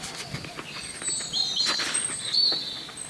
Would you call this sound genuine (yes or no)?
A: yes